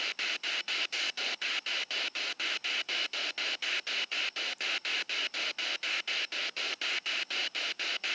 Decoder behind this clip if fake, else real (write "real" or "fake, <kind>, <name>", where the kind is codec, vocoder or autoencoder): real